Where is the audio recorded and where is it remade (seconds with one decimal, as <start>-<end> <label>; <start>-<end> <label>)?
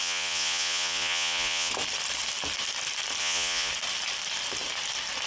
0.0-1.7 remade; 1.7-3.2 recorded; 3.2-3.7 remade; 3.7-5.3 recorded